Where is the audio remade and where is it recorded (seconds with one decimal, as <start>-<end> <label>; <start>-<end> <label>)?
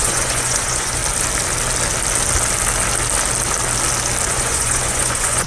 0.0-1.0 remade; 1.0-4.3 recorded; 4.3-5.5 remade